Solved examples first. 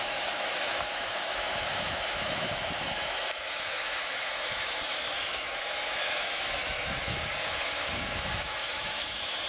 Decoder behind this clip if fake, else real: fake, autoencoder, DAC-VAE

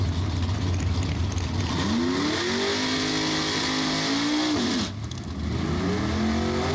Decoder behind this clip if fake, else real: real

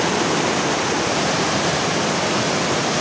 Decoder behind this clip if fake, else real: real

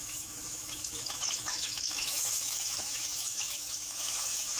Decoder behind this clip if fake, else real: fake, autoencoder, DAC-VAE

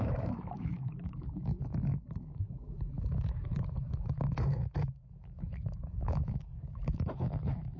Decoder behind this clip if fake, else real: fake, autoencoder, DAC-VAE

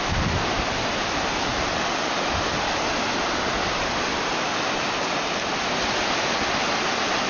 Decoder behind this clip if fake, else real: real